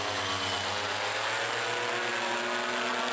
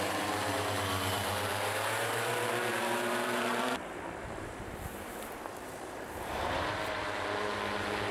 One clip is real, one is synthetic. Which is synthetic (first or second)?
second